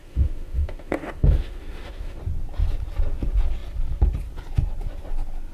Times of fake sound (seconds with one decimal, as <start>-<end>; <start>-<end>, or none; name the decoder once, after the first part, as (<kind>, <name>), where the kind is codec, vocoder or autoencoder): 0.0-2.2 (autoencoder, DAC-VAE)